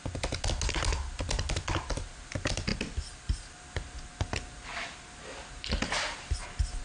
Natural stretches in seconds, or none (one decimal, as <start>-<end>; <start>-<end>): 0.0-6.8